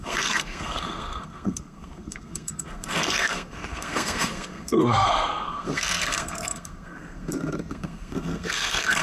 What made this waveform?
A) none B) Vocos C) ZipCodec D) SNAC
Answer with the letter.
D